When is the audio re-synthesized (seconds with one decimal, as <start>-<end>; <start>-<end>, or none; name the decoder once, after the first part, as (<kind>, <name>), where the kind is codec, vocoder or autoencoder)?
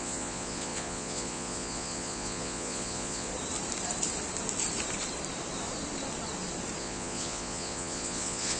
0.0-3.3 (vocoder, Vocos); 6.8-8.6